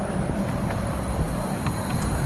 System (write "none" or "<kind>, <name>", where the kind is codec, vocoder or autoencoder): none